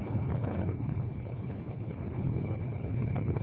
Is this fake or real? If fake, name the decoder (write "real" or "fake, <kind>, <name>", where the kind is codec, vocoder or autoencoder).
fake, codec, HILCodec